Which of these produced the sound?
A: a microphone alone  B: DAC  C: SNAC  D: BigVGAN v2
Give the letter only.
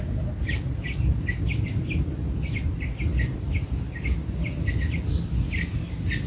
A